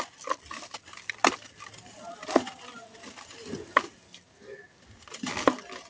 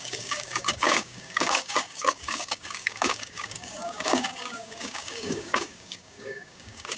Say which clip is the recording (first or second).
first